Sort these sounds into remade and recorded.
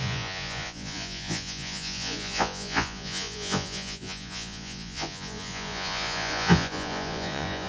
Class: remade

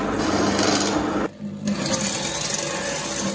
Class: recorded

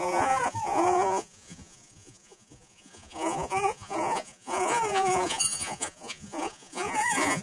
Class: remade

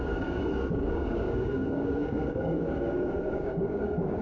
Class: remade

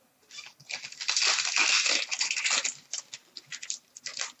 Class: recorded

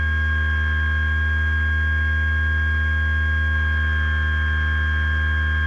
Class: recorded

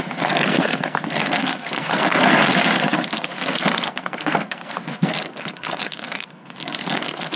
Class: remade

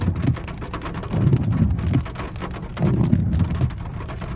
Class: recorded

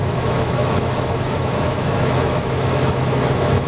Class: remade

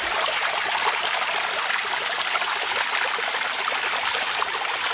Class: remade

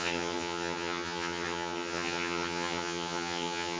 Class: remade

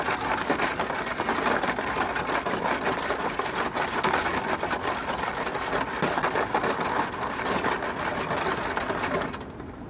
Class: recorded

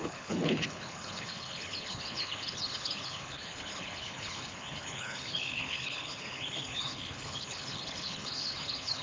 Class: remade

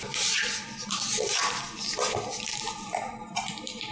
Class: remade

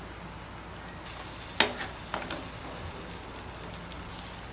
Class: recorded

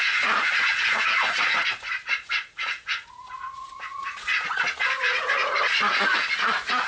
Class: remade